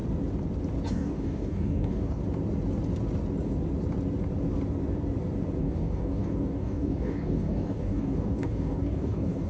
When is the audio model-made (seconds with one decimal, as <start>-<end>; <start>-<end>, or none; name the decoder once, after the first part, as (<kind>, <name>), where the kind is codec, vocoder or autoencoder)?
0.9-2.2 (codec, DAC); 5.6-9.5